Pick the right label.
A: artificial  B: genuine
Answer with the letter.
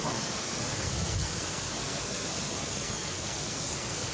A